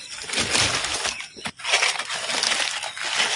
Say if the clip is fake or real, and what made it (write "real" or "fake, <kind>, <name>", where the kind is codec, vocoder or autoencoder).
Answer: real